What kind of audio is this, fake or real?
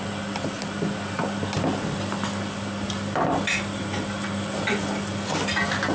real